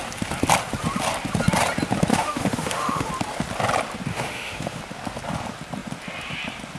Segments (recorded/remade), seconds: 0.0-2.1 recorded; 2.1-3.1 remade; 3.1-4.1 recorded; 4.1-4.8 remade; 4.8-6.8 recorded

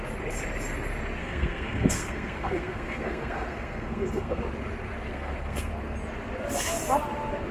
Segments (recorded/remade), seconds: 0.0-1.2 recorded; 1.2-4.4 remade; 4.4-5.1 recorded; 5.1-5.7 remade; 5.7-7.5 recorded

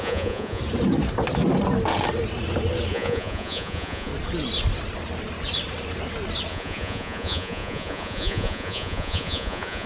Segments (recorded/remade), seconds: 0.0-0.6 remade; 0.6-2.9 recorded; 2.9-4.1 remade; 4.1-6.5 recorded; 6.5-9.9 remade

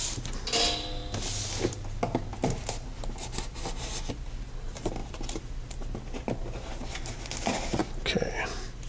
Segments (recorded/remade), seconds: 0.0-5.0 recorded; 5.0-5.7 remade; 5.7-8.9 recorded

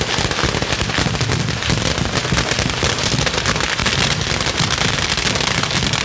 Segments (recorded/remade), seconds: 0.0-6.0 recorded

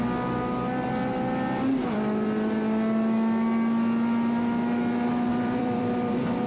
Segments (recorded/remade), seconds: 0.0-5.3 recorded; 5.3-6.5 remade